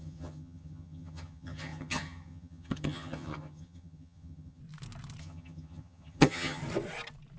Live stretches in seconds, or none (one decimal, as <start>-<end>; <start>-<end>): 4.6-5.2; 6.6-7.4